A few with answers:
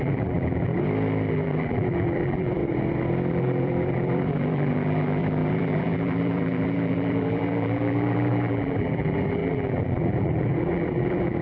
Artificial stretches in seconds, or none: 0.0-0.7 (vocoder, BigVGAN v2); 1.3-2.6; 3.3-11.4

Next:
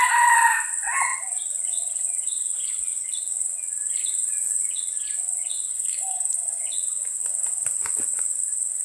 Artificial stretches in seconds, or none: 5.7-6.6 (codec, SNAC)